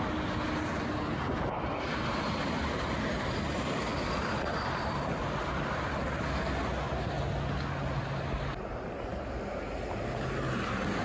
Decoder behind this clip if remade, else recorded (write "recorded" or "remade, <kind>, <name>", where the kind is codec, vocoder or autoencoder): recorded